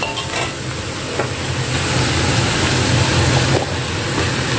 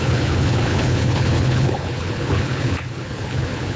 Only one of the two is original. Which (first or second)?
first